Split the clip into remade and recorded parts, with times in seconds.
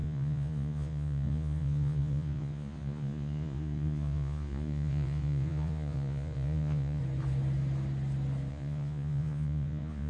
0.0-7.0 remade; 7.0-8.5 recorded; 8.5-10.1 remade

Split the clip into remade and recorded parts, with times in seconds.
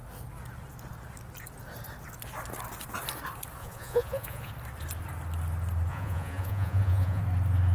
0.0-3.6 recorded; 3.6-4.5 remade; 4.5-5.9 recorded; 5.9-7.2 remade; 7.2-7.7 recorded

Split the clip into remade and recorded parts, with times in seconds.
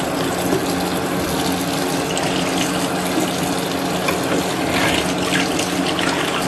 0.0-6.5 recorded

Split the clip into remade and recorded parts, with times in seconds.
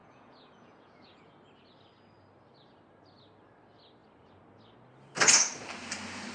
0.0-1.3 remade; 1.3-6.3 recorded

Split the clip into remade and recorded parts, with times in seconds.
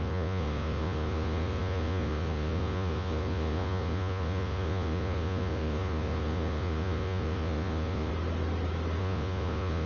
0.0-8.1 remade; 8.1-9.0 recorded; 9.0-9.9 remade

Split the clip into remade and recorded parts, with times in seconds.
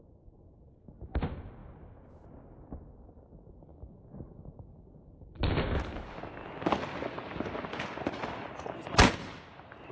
0.0-9.9 recorded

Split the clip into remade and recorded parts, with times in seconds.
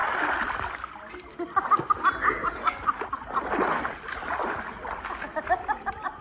0.0-6.2 recorded